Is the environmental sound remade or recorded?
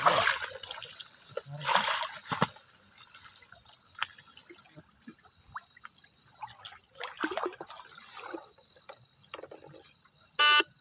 recorded